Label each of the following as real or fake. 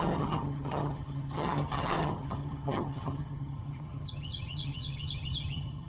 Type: fake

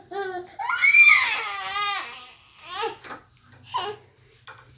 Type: real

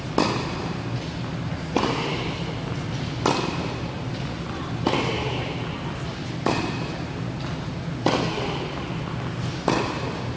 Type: real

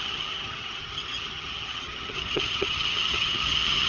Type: fake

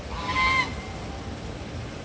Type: real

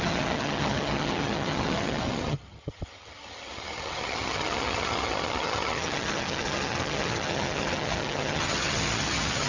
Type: fake